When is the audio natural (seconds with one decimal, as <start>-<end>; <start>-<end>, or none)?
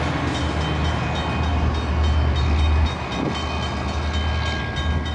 0.0-5.1